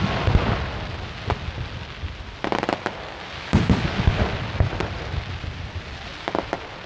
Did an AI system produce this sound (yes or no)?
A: no